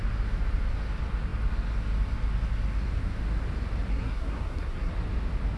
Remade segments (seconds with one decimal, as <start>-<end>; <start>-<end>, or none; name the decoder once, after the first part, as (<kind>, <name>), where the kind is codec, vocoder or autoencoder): 3.9-4.9 (codec, SNAC)